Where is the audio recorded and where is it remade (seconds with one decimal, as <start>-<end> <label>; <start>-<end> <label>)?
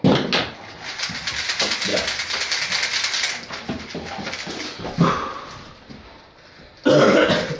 0.0-7.6 recorded